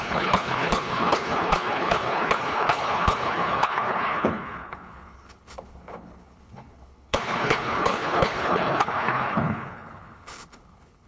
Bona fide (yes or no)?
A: no